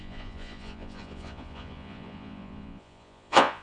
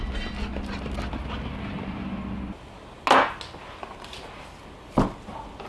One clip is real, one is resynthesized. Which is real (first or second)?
second